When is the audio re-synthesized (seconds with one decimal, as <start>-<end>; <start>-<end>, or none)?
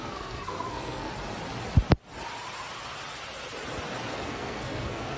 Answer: 0.0-1.1; 4.1-5.2